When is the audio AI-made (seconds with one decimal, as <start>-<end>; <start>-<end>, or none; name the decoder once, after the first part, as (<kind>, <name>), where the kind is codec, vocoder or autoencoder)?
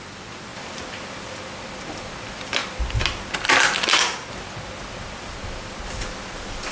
0.0-2.6 (vocoder, BigVGAN v2); 5.0-6.7